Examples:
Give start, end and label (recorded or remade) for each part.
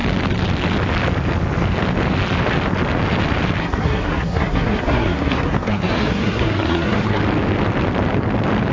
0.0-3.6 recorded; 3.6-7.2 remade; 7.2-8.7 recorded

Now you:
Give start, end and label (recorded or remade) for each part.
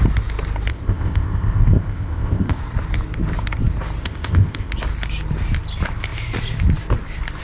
0.0-0.7 recorded; 0.7-2.6 remade; 2.6-4.0 recorded; 4.0-4.7 remade; 4.7-7.4 recorded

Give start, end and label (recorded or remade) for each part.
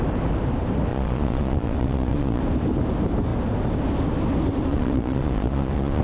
0.0-0.9 recorded; 0.9-2.4 remade; 2.4-4.7 recorded; 4.7-6.0 remade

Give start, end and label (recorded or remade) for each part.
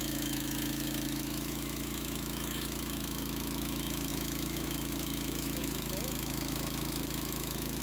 0.0-7.8 remade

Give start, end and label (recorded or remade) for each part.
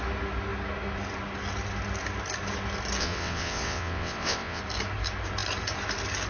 0.0-3.0 recorded; 3.0-4.6 remade; 4.6-6.3 recorded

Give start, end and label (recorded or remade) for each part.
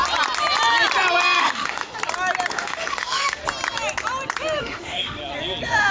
0.0-1.4 recorded; 1.4-1.9 remade; 1.9-2.5 recorded; 2.5-3.4 remade; 3.4-4.6 recorded; 4.6-5.2 remade; 5.2-5.9 recorded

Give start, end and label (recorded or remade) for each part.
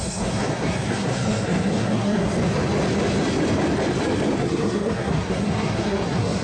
0.0-2.3 remade; 2.3-4.4 recorded; 4.4-6.4 remade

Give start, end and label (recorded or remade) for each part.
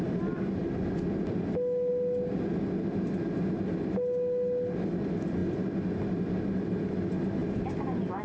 0.0-8.2 recorded